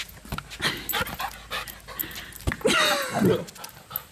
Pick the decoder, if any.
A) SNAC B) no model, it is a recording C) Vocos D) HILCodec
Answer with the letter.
B